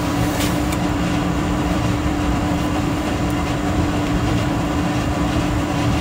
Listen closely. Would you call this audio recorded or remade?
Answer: remade